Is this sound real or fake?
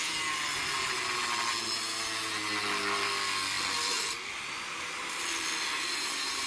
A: real